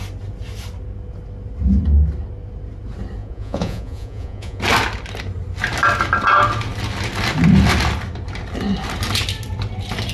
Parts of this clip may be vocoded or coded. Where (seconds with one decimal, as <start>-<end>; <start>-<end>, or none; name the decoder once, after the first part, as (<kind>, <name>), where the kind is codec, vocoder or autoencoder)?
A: 3.2-4.6 (vocoder, Vocos)